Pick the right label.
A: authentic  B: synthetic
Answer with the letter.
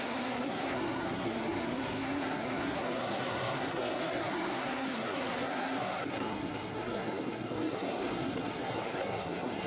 B